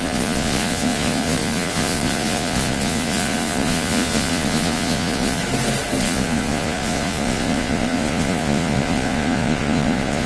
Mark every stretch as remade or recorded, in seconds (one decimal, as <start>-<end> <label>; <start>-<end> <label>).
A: 0.0-5.4 remade; 5.4-6.0 recorded; 6.0-10.3 remade